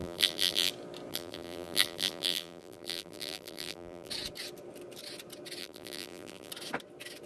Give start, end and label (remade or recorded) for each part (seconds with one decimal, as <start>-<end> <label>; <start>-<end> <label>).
0.0-0.7 remade; 0.7-1.1 recorded; 1.1-4.1 remade; 4.1-5.6 recorded; 5.6-6.5 remade; 6.5-7.3 recorded